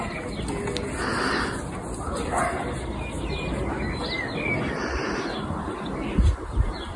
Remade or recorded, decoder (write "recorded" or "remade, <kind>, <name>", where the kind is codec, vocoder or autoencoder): recorded